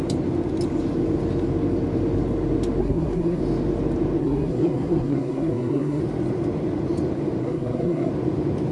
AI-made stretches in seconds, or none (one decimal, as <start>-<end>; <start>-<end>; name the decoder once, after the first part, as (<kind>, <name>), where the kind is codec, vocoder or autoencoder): 2.8-3.4 (codec, SNAC); 4.2-6.0; 7.4-8.1